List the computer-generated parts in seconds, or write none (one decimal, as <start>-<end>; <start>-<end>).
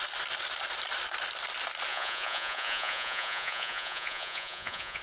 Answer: 1.9-5.0